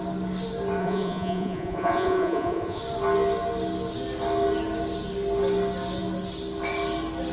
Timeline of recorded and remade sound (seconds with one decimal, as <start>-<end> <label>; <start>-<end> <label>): 0.0-0.8 recorded; 0.8-2.8 remade; 2.8-7.3 recorded